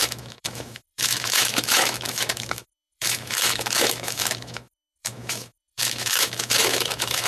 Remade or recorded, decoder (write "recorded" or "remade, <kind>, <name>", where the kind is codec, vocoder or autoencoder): remade, autoencoder, DAC-VAE